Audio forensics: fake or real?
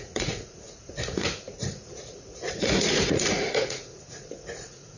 fake